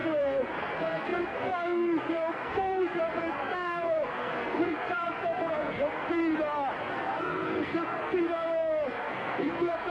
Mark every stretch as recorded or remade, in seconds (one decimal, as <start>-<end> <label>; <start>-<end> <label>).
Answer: 0.0-6.2 remade; 6.2-6.8 recorded; 6.8-9.9 remade